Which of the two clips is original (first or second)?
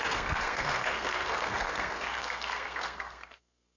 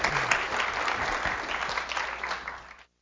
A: second